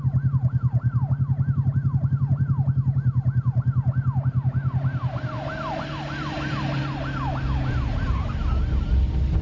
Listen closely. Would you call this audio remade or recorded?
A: recorded